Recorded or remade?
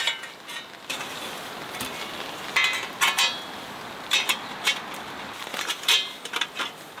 remade